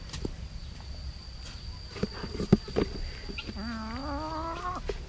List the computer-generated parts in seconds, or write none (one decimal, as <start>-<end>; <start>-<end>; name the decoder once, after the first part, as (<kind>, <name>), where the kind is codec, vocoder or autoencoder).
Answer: none